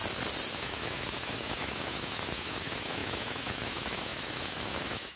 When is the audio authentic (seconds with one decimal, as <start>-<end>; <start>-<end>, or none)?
0.0-0.5